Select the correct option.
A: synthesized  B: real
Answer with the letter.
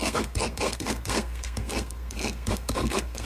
A